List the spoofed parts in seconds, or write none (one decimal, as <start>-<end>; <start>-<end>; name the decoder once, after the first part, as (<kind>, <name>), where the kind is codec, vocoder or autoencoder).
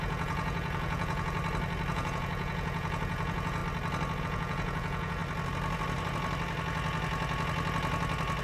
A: 0.0-1.4 (vocoder, Vocos); 1.9-3.6; 4.2-5.2